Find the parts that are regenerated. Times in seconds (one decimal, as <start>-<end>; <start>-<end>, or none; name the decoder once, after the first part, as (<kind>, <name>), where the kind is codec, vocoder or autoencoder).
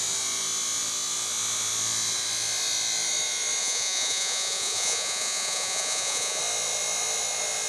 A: 3.6-6.4 (vocoder, Vocos)